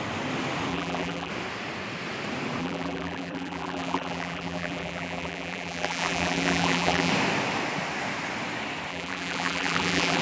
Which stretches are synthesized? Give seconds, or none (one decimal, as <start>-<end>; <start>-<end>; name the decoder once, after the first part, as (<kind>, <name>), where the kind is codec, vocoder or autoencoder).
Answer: 0.7-1.3 (vocoder, BigVGAN v2); 2.6-7.1; 8.9-10.2

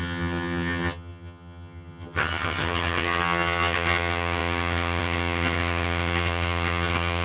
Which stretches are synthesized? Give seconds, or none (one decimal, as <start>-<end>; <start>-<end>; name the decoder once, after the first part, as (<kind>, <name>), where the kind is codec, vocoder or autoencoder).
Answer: 0.0-7.2 (vocoder, HiFi-GAN)

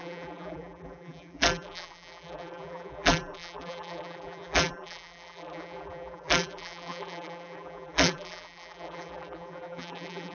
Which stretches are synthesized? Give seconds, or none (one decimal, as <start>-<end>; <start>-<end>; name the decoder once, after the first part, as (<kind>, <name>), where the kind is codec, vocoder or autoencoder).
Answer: 0.0-10.3 (vocoder, BigVGAN v2)

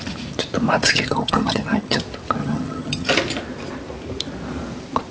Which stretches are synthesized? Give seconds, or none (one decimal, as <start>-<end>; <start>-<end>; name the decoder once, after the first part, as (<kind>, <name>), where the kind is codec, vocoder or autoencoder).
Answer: 0.8-2.0 (vocoder, HiFi-GAN); 2.4-3.1